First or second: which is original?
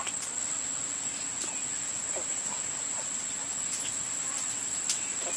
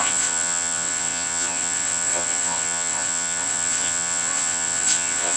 first